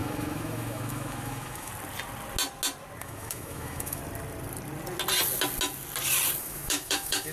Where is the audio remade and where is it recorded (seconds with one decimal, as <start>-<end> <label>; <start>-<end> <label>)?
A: 0.0-1.7 remade; 1.7-3.0 recorded; 3.0-4.0 remade; 4.0-6.4 recorded; 6.4-7.3 remade